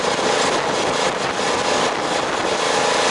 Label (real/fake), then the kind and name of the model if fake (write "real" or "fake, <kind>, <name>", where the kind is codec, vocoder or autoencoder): real